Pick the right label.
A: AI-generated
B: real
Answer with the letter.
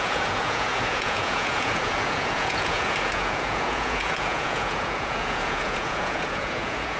A